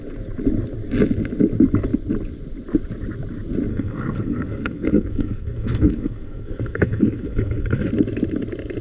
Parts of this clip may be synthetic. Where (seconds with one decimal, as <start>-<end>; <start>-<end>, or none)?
3.7-7.9